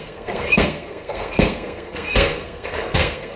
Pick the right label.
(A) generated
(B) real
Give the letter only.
A